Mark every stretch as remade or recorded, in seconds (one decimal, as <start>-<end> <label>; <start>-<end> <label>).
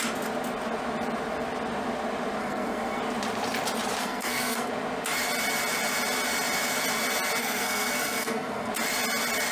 0.0-2.4 recorded; 2.4-3.0 remade; 3.0-4.0 recorded; 4.0-4.7 remade; 4.7-7.4 recorded; 7.4-8.7 remade; 8.7-9.5 recorded